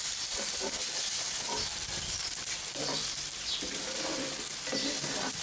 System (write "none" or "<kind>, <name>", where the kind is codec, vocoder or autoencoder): vocoder, BigVGAN v2